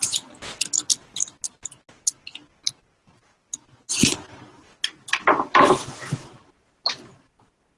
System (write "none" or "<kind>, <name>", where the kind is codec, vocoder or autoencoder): none